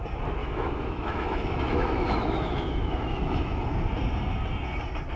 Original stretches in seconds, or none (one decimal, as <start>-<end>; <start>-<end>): 0.0-0.4; 3.5-5.2